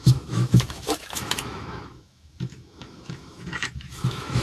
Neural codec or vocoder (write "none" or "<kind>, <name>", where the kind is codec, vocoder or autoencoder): autoencoder, DAC-VAE